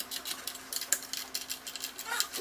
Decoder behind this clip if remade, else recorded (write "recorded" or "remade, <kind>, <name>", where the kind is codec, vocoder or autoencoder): recorded